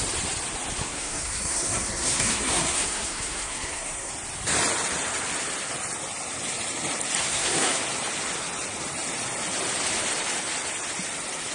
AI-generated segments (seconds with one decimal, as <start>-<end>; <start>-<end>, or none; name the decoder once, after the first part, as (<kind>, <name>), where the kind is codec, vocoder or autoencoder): 0.8-4.1 (codec, SNAC); 7.2-7.8